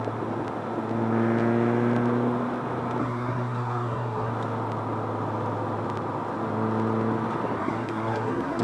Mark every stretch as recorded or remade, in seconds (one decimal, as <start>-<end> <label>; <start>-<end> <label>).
0.0-3.0 recorded; 3.0-4.3 remade; 4.3-7.6 recorded; 7.6-8.6 remade